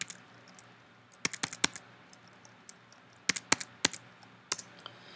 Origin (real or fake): real